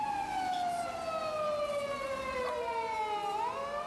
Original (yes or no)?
yes